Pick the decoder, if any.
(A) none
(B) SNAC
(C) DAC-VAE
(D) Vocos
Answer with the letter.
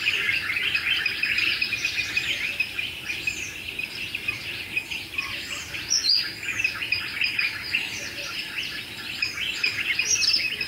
A